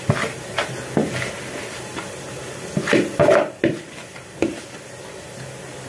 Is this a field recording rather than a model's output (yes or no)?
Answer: yes